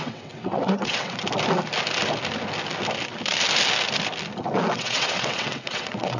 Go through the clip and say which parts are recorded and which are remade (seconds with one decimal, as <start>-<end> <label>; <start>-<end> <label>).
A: 0.0-1.2 remade; 1.2-4.7 recorded; 4.7-6.2 remade